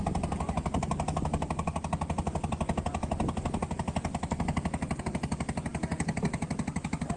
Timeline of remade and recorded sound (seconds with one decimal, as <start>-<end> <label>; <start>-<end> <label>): 0.0-7.2 recorded